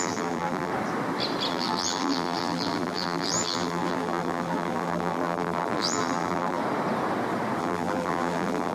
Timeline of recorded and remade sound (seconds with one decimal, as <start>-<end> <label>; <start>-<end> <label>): 0.0-0.7 remade; 0.7-1.5 recorded; 1.5-6.6 remade; 6.6-7.6 recorded; 7.6-8.7 remade

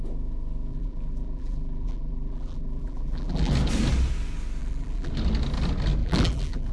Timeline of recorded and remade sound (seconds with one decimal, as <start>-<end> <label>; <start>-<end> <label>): 0.0-0.7 recorded; 0.7-3.5 remade; 3.5-4.6 recorded; 4.6-5.1 remade; 5.1-6.0 recorded; 6.0-6.7 remade